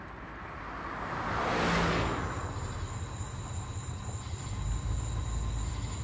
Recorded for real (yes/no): yes